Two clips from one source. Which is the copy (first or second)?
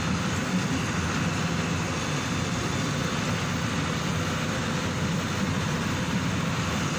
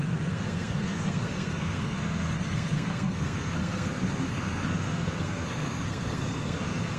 second